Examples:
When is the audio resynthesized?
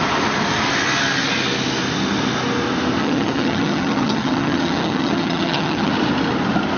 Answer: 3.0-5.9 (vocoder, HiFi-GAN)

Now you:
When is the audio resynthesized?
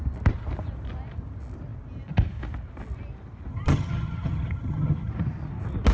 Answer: 3.5-5.1 (vocoder, HiFi-GAN)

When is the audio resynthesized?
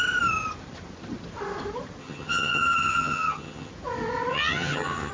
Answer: 2.0-3.7 (vocoder, HiFi-GAN); 4.3-5.1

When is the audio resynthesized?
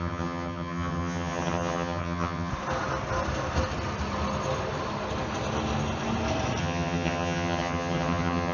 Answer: 0.0-2.5 (vocoder, HiFi-GAN); 6.6-8.5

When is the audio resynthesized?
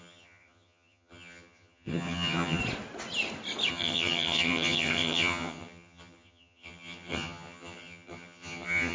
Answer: 0.0-2.6 (vocoder, HiFi-GAN); 3.7-8.9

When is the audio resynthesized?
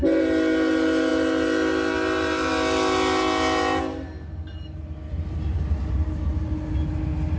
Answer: none